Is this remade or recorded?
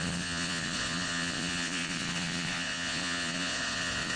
remade